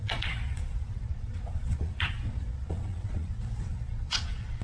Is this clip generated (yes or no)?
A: yes